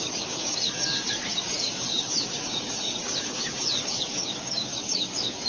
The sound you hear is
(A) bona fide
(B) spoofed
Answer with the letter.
B